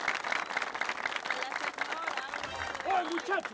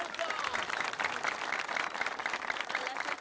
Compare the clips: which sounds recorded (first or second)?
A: first